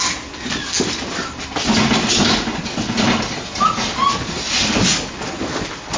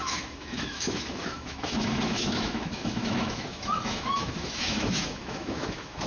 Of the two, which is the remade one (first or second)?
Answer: second